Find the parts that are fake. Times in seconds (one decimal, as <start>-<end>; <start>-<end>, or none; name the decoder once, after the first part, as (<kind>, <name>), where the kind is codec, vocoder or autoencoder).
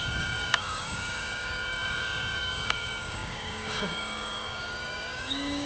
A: 0.0-5.7 (codec, DAC)